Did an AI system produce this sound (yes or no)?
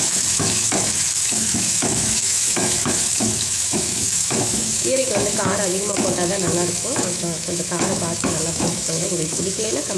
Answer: yes